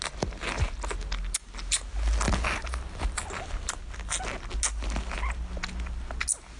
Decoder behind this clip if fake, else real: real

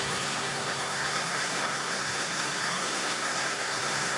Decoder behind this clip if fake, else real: fake, codec, SNAC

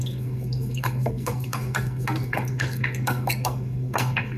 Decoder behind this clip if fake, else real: fake, codec, SNAC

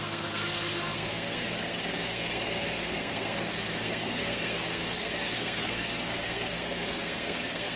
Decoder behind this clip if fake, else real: fake, codec, SNAC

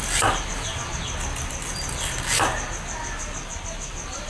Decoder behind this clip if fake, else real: real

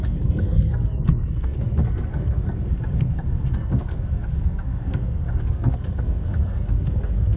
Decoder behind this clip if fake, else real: fake, codec, SNAC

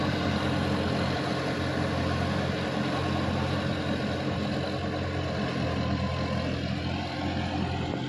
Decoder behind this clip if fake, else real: real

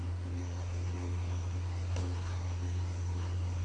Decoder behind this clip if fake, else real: fake, codec, SNAC